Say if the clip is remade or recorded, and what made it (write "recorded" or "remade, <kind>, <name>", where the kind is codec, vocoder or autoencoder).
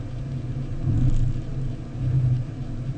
recorded